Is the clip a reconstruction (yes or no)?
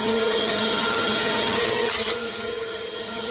yes